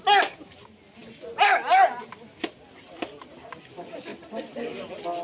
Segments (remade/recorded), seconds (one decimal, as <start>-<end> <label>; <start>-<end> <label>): 0.0-4.1 recorded; 4.1-4.8 remade; 4.8-5.2 recorded